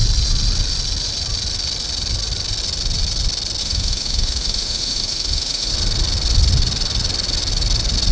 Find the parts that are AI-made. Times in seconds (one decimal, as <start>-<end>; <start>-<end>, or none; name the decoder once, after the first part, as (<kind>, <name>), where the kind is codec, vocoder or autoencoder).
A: 3.6-5.7 (autoencoder, DAC-VAE)